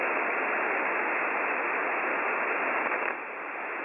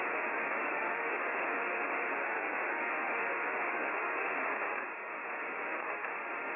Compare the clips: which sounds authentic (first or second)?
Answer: first